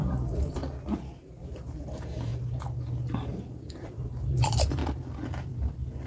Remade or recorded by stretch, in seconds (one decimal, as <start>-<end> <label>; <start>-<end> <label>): 0.0-0.6 remade; 0.6-1.2 recorded; 1.2-2.3 remade; 2.3-3.4 recorded; 3.4-4.8 remade; 4.8-6.1 recorded